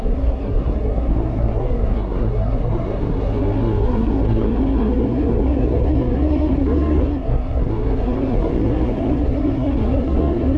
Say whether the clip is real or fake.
fake